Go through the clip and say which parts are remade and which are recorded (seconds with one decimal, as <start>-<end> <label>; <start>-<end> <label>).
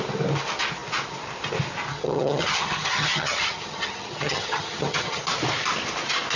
0.0-1.9 recorded; 1.9-5.2 remade; 5.2-6.4 recorded